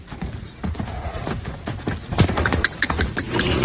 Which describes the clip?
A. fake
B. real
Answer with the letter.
A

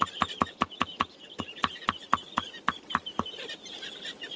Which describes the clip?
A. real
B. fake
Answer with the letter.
A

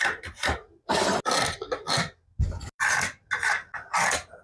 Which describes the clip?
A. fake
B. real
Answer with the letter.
B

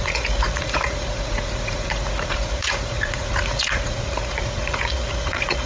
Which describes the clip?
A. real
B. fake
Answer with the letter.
B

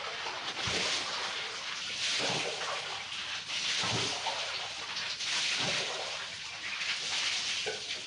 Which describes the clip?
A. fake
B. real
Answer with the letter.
B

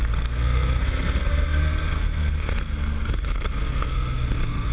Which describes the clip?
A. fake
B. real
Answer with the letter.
A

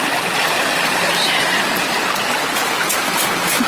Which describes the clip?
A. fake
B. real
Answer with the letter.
B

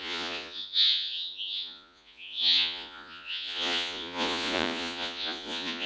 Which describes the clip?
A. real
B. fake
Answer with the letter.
B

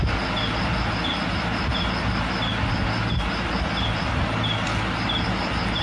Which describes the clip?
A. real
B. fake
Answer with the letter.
A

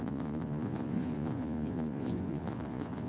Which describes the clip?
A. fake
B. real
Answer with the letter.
A